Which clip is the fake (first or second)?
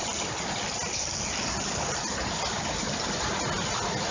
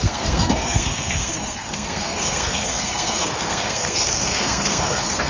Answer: second